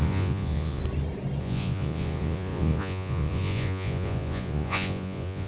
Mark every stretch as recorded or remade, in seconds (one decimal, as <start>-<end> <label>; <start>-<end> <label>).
0.0-0.8 remade; 0.8-1.4 recorded; 1.4-5.5 remade